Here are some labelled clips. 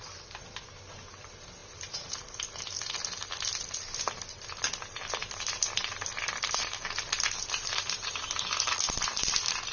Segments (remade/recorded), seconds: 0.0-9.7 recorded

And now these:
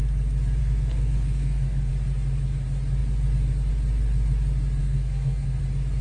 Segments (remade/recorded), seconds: 0.0-0.6 recorded; 0.6-1.9 remade; 1.9-4.8 recorded; 4.8-5.6 remade; 5.6-6.0 recorded

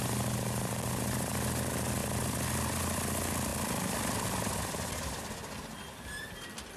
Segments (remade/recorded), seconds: 0.0-6.8 recorded

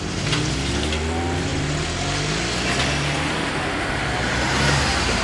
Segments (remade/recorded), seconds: 0.0-5.2 recorded

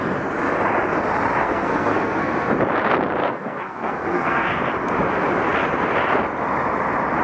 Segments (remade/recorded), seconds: 0.0-1.4 recorded; 1.4-2.5 remade; 2.5-3.2 recorded; 3.2-4.6 remade; 4.6-7.2 recorded